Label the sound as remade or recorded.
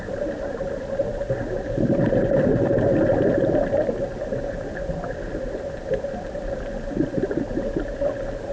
recorded